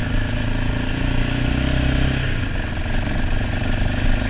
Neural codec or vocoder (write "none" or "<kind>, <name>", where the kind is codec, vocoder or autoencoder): none